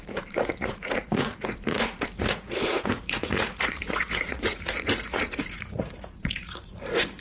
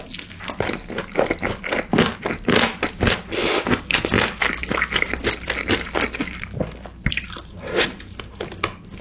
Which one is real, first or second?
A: second